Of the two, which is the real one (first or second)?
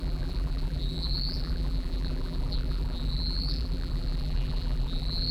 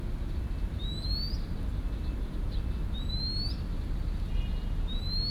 second